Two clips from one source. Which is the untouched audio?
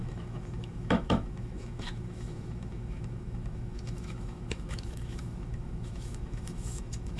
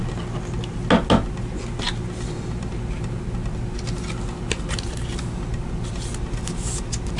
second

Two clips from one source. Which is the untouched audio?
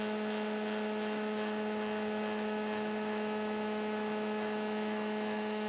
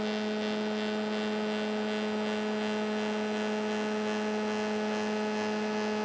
second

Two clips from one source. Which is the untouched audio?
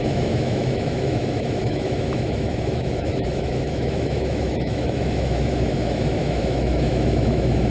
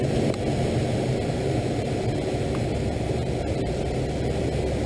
second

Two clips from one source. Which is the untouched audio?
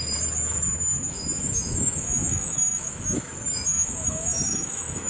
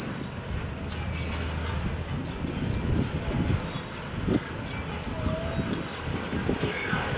second